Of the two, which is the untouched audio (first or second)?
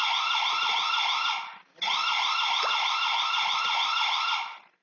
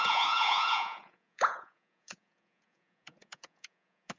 first